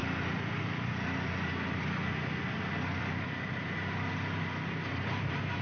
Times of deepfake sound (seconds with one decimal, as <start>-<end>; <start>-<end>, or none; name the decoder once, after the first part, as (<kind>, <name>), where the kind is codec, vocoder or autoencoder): none